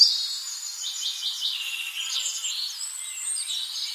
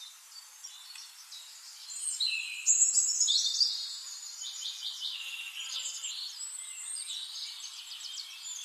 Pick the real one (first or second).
first